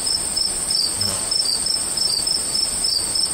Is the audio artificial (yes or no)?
yes